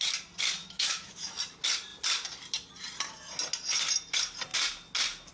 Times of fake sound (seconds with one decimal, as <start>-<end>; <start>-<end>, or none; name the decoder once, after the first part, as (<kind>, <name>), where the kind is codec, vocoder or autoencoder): 0.6-1.4 (autoencoder, DAC-VAE)